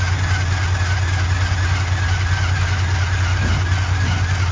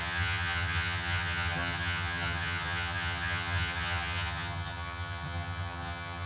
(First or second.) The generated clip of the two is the second